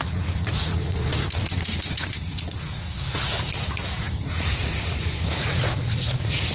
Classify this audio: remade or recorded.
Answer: remade